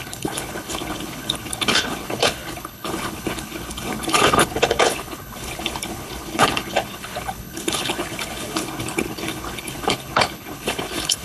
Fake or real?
fake